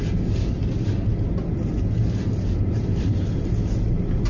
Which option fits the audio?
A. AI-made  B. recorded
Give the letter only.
B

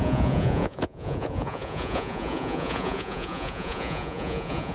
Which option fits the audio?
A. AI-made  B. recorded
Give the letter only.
A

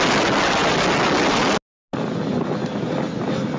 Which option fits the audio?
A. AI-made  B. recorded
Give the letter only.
B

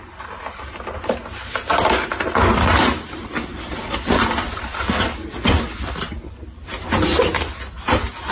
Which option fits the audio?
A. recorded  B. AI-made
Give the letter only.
A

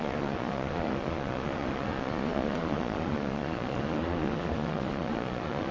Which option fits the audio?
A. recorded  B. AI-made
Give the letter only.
B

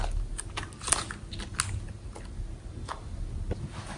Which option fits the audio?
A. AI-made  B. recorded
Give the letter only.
B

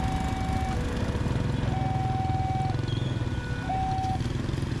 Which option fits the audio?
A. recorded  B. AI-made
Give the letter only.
A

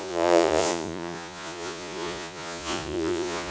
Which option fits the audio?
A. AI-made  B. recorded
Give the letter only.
A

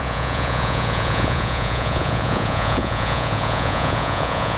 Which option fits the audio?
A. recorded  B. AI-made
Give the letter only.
B